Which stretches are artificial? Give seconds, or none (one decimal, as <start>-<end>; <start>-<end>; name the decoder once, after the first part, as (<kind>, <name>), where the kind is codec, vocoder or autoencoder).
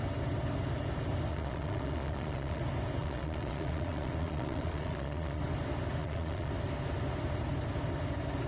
1.3-2.6 (vocoder, Vocos); 3.0-5.4; 6.0-6.5